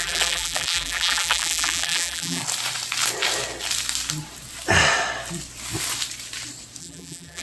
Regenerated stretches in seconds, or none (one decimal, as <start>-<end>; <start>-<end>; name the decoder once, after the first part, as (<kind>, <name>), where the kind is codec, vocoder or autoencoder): 0.0-2.4 (vocoder, BigVGAN v2); 6.8-7.4